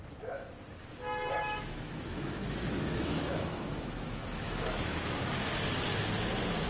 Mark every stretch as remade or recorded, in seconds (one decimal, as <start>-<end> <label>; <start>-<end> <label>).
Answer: 0.0-1.3 recorded; 1.3-5.3 remade; 5.3-6.7 recorded